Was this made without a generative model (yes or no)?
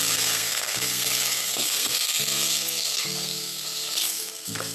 no